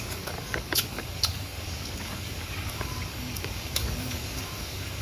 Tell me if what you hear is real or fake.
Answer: fake